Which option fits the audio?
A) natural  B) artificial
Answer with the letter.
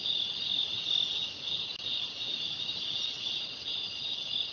A